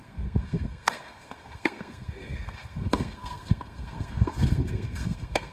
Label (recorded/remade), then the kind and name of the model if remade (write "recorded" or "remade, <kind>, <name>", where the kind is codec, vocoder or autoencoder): remade, codec, SNAC